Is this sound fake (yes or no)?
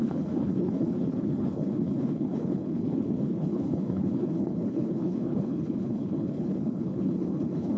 yes